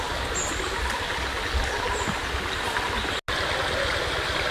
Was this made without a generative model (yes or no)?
yes